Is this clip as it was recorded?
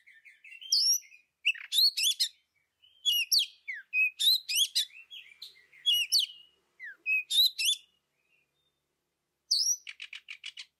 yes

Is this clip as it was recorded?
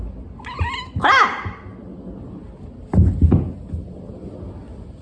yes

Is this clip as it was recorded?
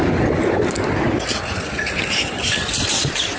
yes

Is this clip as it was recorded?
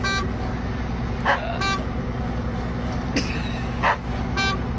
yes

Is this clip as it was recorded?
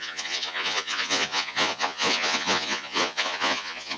no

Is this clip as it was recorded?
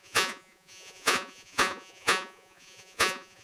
no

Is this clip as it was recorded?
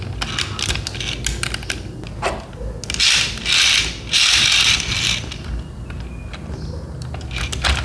yes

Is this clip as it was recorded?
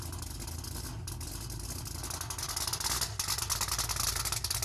yes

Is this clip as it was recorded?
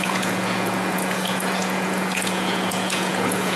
no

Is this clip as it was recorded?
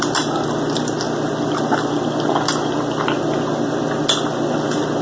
yes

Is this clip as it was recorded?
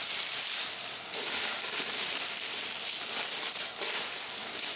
yes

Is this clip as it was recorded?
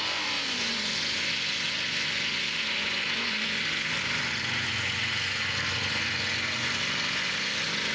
no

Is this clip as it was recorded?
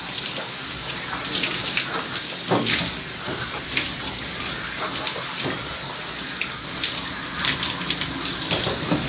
yes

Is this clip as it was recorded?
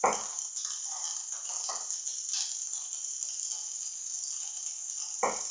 yes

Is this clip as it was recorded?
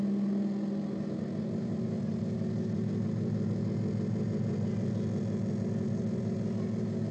yes